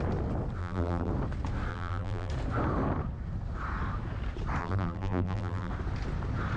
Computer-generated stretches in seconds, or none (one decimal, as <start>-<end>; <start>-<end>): 0.6-1.1; 1.7-2.3; 4.6-5.7

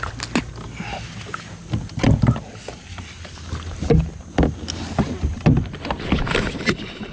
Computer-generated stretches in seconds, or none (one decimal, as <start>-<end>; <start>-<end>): none

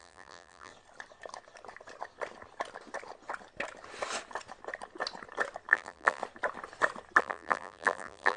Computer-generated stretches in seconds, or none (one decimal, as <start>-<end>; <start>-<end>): 0.0-0.7; 5.7-6.2; 7.2-8.4

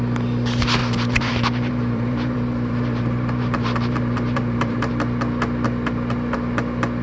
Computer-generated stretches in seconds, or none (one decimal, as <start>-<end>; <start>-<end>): 0.8-4.9

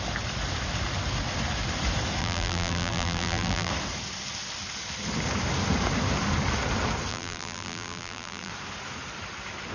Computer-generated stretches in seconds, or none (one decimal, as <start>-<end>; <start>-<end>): 2.2-3.7; 7.1-8.5

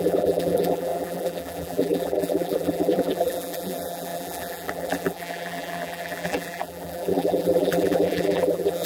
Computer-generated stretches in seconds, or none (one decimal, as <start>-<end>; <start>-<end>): 0.0-8.9

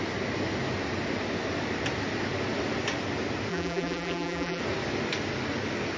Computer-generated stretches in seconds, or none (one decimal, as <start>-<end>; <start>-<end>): 3.5-4.6

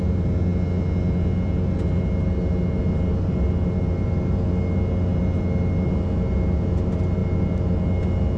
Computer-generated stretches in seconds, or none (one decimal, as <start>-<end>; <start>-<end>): none